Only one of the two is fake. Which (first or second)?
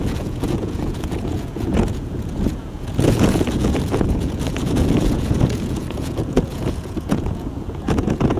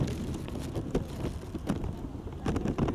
first